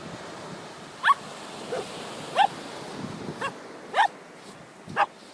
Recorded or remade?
recorded